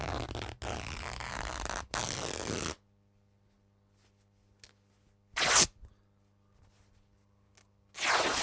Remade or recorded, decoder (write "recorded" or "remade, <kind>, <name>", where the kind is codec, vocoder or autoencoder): recorded